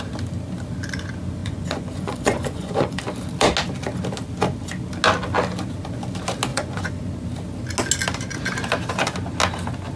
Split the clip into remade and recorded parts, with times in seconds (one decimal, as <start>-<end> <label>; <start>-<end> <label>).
0.0-1.4 recorded; 1.4-3.0 remade; 3.0-6.5 recorded; 6.5-7.0 remade; 7.0-10.0 recorded